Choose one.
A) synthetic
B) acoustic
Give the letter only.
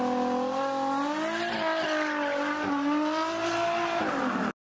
B